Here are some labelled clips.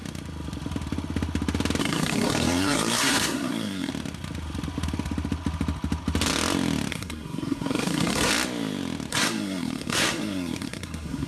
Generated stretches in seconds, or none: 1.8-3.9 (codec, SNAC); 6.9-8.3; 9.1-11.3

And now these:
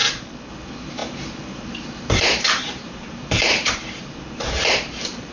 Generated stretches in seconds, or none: 0.5-5.3 (vocoder, BigVGAN v2)

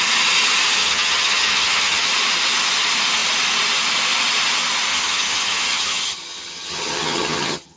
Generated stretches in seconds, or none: 0.8-2.1 (vocoder, HiFi-GAN); 4.9-7.8

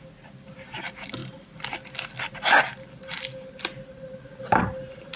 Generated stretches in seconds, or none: none